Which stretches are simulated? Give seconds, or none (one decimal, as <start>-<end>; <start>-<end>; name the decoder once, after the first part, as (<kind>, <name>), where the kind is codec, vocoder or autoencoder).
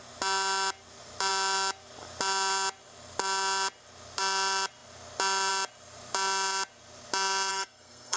7.5-8.2 (codec, SNAC)